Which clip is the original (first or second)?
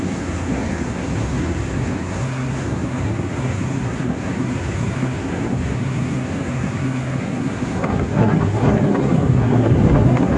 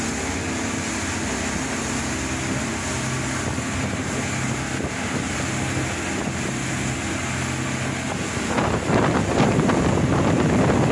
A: second